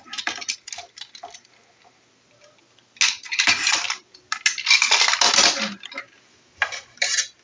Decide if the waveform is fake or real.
real